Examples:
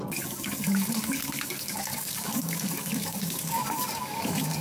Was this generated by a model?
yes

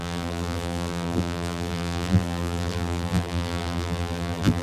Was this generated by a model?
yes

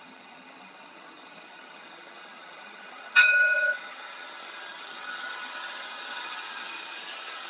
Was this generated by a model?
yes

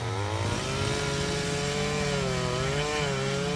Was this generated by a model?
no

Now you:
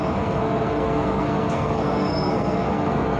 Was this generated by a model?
yes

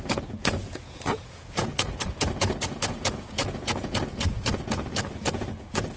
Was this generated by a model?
yes